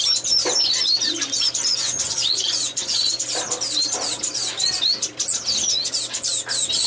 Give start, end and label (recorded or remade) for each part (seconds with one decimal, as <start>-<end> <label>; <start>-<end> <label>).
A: 0.0-1.7 recorded; 1.7-3.3 remade; 3.3-6.9 recorded